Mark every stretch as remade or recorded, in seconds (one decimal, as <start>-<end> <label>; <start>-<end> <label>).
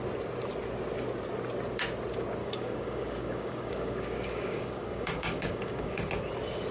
0.0-2.4 recorded; 2.4-6.1 remade; 6.1-6.7 recorded